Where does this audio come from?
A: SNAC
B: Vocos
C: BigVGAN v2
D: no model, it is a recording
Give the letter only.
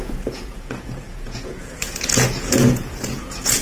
B